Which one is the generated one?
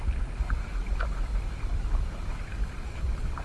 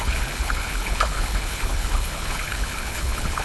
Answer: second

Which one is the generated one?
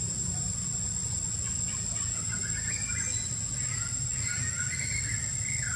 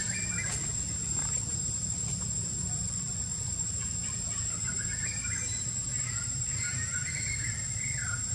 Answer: second